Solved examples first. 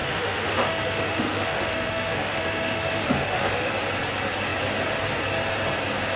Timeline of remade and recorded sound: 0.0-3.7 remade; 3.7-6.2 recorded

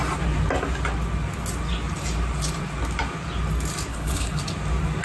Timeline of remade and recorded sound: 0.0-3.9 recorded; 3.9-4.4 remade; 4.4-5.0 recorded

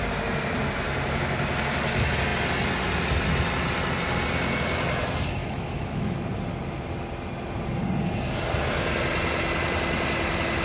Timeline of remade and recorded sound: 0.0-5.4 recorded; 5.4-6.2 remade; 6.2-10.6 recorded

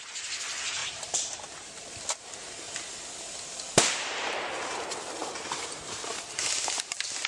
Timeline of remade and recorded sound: 0.0-7.3 recorded

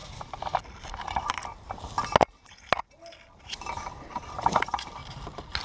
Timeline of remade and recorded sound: 0.0-3.4 recorded; 3.4-5.0 remade; 5.0-5.6 recorded

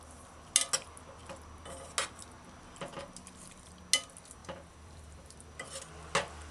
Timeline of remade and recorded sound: 0.0-4.4 recorded; 4.4-5.5 remade; 5.5-6.5 recorded

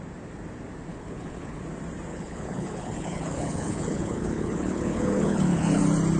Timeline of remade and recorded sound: 0.0-0.9 recorded; 0.9-1.6 remade; 1.6-2.1 recorded; 2.1-5.8 remade; 5.8-6.2 recorded